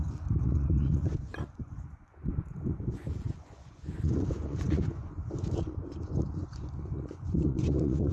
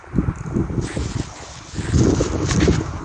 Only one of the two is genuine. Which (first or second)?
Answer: second